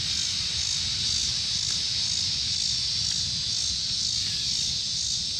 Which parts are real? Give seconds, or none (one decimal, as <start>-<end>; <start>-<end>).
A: 0.0-5.4